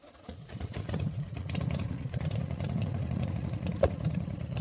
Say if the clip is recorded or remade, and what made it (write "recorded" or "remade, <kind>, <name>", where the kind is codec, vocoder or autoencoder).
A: remade, vocoder, Vocos